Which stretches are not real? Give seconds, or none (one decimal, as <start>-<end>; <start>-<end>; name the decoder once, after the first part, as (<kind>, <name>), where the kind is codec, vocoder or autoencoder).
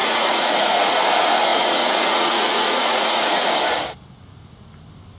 0.0-1.0 (vocoder, Vocos); 1.5-3.5